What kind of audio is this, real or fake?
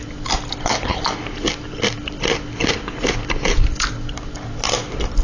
real